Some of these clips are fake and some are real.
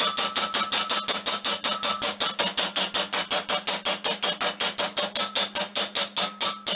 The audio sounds real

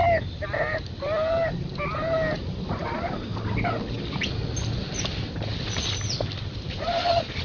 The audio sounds real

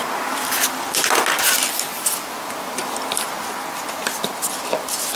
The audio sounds real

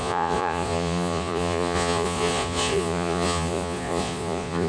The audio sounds fake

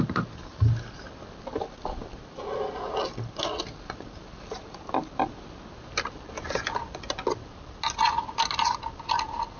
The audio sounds real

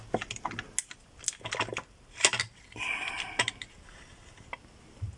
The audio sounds real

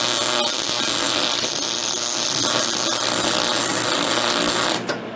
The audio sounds real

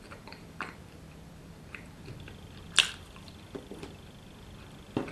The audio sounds fake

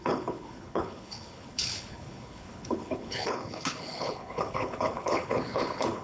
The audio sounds fake